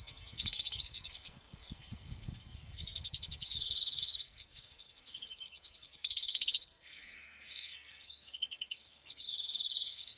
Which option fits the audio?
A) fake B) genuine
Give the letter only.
A